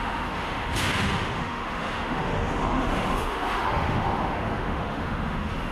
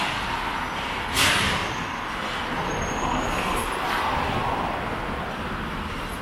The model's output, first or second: first